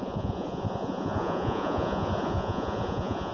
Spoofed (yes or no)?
yes